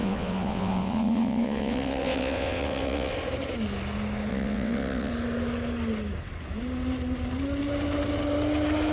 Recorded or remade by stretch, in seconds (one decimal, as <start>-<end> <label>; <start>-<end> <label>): 0.0-3.1 remade; 3.1-4.3 recorded; 4.3-5.1 remade; 5.1-8.9 recorded